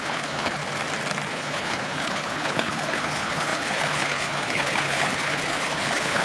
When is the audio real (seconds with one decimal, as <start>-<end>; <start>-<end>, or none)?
0.6-1.3